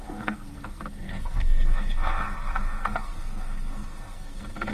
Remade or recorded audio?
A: remade